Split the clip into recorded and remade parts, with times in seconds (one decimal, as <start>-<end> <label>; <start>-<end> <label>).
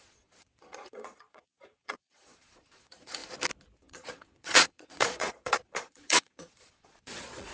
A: 0.0-3.2 remade; 3.2-3.8 recorded; 3.8-7.5 remade